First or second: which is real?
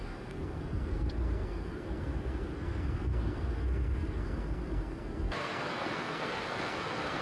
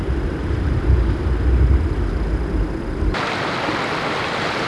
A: second